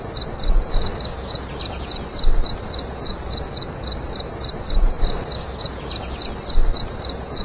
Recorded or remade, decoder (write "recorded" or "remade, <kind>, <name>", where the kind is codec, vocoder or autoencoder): recorded